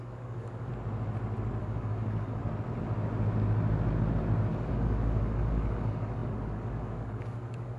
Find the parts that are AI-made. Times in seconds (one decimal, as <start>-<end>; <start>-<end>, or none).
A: 0.0-0.7; 1.6-2.4; 4.5-7.8